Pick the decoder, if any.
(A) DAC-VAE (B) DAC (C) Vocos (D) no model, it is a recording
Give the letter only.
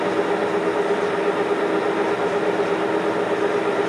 D